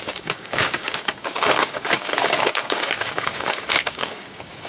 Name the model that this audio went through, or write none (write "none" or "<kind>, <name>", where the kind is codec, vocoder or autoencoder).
codec, DAC